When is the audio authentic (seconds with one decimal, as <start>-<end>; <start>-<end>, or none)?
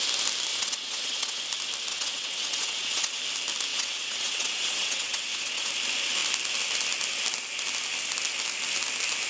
0.0-0.5; 1.4-1.9; 3.2-3.7; 5.7-9.3